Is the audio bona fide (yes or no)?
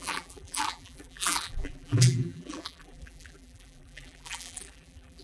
no